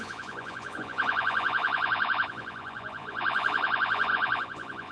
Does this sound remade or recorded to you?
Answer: remade